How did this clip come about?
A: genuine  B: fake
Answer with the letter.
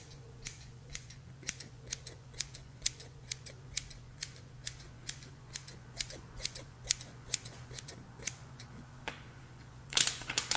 B